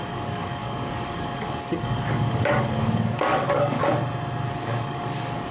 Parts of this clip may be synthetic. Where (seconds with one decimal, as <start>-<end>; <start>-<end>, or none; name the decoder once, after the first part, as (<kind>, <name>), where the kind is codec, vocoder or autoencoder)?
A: 0.0-3.8 (codec, DAC); 4.5-5.5

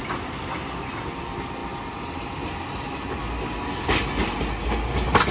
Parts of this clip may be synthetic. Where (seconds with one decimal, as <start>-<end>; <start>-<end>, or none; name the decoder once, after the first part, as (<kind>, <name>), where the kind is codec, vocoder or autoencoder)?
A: none

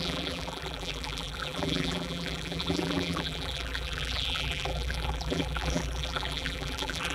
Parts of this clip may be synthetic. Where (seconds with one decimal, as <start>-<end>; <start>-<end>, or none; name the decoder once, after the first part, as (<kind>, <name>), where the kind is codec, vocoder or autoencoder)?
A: 0.0-7.1 (vocoder, BigVGAN v2)

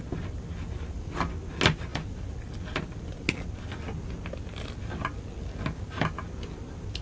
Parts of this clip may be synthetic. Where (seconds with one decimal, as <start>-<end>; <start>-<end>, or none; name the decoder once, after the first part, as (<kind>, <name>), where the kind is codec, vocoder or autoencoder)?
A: none

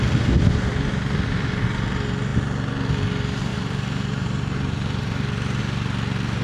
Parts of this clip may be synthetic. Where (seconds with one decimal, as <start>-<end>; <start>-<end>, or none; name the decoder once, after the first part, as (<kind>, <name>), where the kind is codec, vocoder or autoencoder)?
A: 3.5-5.6 (vocoder, BigVGAN v2)

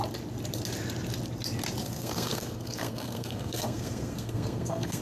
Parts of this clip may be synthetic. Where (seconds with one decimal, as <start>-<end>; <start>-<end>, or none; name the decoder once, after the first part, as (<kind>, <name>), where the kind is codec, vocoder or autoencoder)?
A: 1.8-5.0 (codec, SNAC)

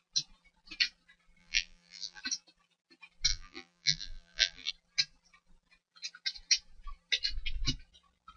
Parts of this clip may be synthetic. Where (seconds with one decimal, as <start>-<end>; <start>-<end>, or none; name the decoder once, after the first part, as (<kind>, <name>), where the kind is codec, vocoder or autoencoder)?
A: 1.4-2.2 (vocoder, BigVGAN v2); 3.3-4.7